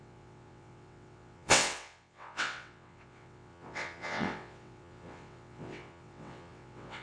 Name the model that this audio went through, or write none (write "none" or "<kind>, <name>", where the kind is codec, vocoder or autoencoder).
vocoder, WaveNeXt